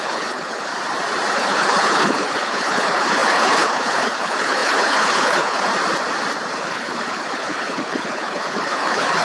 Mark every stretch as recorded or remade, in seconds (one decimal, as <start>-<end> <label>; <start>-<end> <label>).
0.0-0.7 remade; 0.7-1.3 recorded; 1.3-5.7 remade; 5.7-6.5 recorded; 6.5-9.2 remade